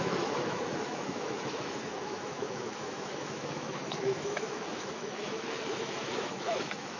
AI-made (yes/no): yes